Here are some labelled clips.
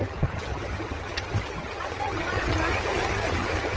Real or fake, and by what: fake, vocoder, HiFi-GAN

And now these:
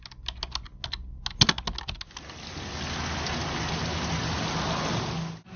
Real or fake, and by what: real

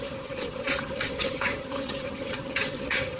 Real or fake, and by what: fake, vocoder, HiFi-GAN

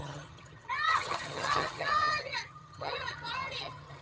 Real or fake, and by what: fake, vocoder, HiFi-GAN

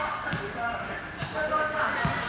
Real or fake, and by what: real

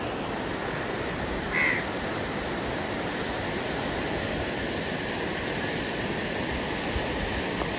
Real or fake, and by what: real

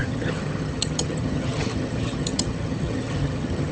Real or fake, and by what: fake, vocoder, HiFi-GAN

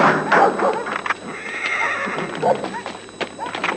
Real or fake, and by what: real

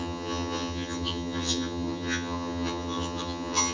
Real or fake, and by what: fake, vocoder, HiFi-GAN